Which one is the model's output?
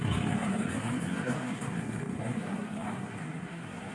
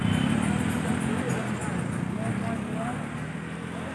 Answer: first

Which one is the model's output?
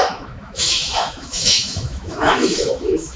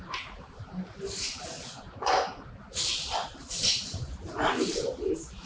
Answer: first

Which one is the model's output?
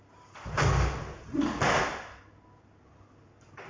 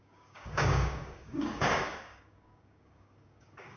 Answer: second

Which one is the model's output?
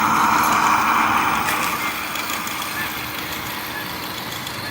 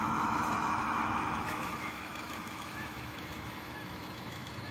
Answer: second